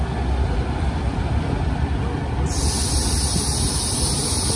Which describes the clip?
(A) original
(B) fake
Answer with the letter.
A